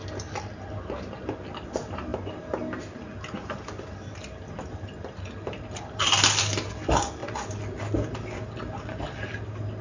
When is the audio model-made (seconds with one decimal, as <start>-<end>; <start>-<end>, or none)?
none